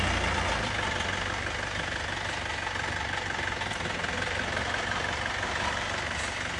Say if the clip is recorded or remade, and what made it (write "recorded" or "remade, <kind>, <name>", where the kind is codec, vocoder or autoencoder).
recorded